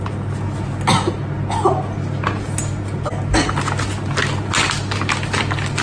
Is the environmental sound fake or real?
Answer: real